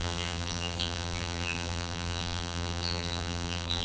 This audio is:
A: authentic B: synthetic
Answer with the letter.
B